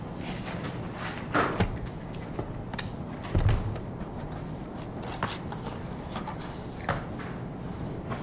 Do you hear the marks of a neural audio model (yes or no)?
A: no